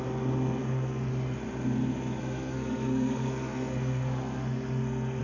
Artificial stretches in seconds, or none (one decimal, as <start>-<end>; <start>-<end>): 0.6-1.1; 2.2-5.2